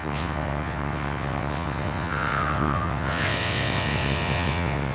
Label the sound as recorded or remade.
remade